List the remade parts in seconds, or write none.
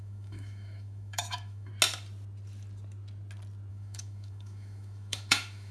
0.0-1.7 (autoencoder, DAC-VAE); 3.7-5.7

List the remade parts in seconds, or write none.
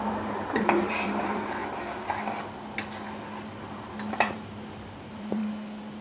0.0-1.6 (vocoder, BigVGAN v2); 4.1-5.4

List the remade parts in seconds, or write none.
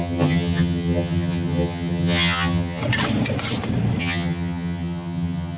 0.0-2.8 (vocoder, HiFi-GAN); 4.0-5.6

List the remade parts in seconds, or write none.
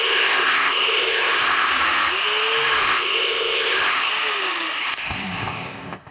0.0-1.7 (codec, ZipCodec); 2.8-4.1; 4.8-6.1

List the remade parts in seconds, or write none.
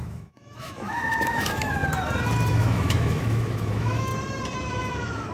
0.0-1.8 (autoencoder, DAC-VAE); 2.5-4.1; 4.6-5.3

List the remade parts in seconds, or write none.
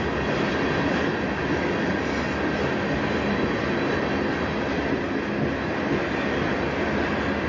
none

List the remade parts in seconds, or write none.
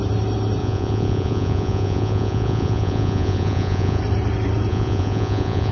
0.6-4.0 (vocoder, Vocos); 4.7-5.7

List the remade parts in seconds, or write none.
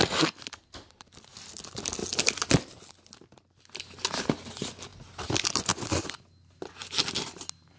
none